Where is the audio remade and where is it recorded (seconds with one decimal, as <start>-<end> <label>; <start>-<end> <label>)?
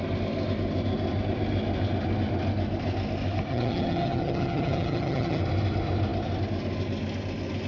0.0-3.5 recorded; 3.5-5.4 remade; 5.4-7.7 recorded